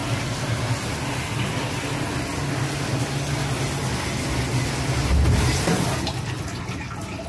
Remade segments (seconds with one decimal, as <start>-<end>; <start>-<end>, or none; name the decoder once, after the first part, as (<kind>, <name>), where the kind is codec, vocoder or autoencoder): none